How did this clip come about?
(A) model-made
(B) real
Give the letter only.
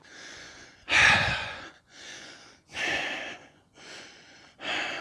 A